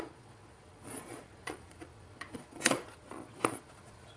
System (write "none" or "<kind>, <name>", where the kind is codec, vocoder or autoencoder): vocoder, Vocos